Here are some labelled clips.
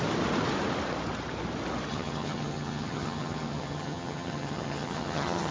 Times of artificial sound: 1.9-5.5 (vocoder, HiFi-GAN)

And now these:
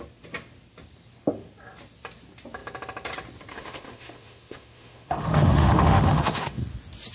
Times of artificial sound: 3.5-6.6 (autoencoder, DAC-VAE)

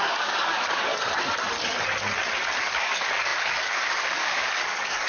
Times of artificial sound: 0.0-0.9 (codec, DAC); 2.6-5.1

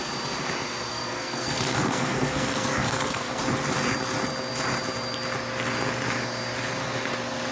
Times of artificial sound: 0.9-3.4 (codec, SNAC)

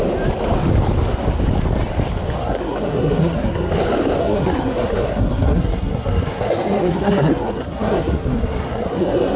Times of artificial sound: 2.4-3.7 (codec, SNAC); 4.2-9.4

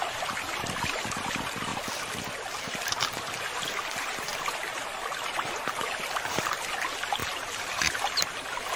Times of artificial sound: 7.2-7.8 (vocoder, BigVGAN v2)